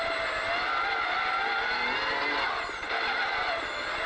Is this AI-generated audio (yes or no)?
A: no